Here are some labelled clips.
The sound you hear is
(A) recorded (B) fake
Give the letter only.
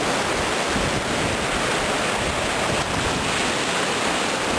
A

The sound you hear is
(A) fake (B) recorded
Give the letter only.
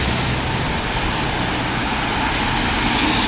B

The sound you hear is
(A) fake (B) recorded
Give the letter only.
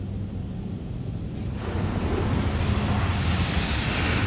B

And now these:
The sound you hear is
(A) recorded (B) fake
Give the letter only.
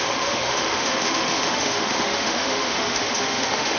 B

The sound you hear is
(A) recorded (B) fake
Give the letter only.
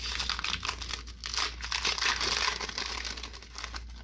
A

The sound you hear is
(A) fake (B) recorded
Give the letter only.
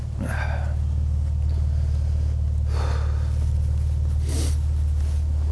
B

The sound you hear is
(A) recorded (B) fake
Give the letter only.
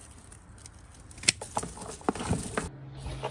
A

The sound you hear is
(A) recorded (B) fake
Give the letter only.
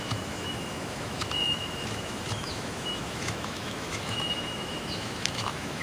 B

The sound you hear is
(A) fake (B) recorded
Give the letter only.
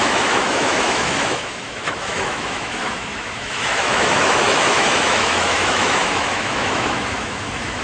A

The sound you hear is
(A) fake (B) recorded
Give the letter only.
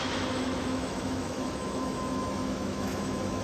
A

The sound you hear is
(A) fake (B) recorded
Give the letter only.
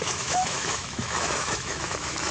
A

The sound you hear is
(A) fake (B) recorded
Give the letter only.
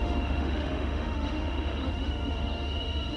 A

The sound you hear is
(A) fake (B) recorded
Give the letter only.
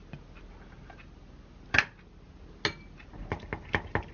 B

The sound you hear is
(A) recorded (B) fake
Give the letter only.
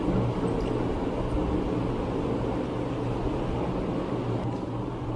A